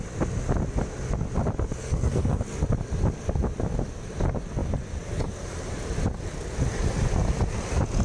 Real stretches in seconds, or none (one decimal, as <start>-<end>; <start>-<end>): 0.0-1.8; 2.4-8.0